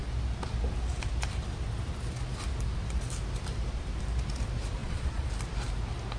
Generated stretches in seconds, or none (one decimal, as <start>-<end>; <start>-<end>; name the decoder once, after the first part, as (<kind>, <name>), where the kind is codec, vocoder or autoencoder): 4.8-5.3 (vocoder, Vocos)